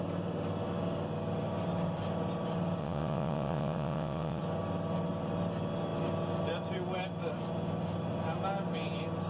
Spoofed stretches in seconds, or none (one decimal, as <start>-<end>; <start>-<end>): 2.8-4.4